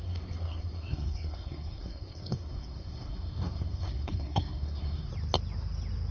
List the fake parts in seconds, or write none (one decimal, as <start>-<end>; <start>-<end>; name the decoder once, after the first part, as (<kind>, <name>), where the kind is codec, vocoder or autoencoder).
0.0-5.1 (codec, SNAC)